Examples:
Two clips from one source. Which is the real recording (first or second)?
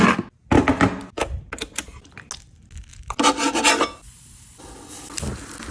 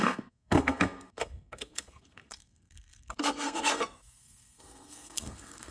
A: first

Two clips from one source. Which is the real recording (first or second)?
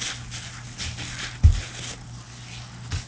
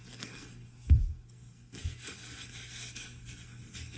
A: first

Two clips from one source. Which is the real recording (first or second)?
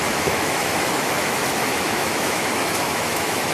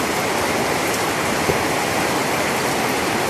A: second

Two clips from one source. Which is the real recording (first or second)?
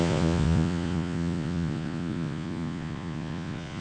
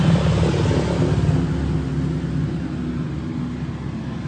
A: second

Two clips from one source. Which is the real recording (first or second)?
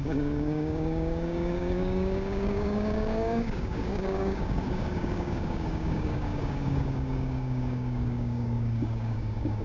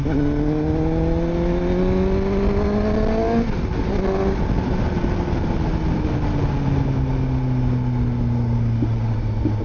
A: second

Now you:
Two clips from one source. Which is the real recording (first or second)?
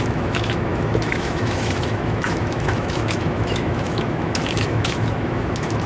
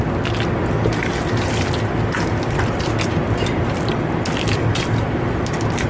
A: second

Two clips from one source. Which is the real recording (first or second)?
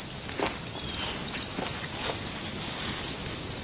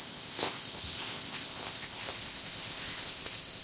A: first